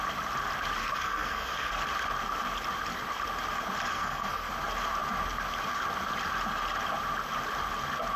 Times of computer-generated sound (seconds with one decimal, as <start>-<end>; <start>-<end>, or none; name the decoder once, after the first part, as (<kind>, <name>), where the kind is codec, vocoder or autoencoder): 0.8-1.7 (codec, SNAC); 3.9-4.5